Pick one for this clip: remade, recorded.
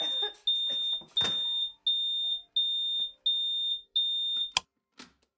recorded